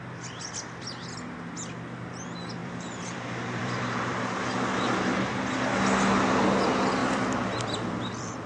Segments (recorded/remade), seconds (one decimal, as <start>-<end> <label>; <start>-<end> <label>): 0.0-2.6 recorded; 2.6-4.4 remade; 4.4-7.0 recorded; 7.0-8.5 remade